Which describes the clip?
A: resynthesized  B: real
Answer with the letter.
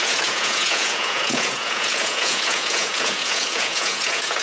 A